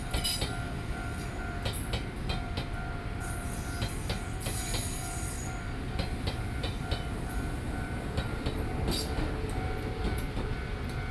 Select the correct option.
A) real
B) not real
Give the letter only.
A